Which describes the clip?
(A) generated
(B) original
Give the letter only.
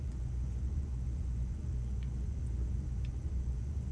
A